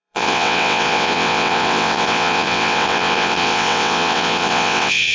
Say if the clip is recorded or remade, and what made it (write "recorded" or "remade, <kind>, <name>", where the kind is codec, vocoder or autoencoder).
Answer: remade, vocoder, WaveNeXt